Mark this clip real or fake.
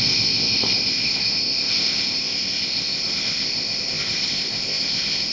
fake